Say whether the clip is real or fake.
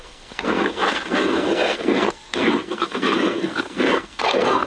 fake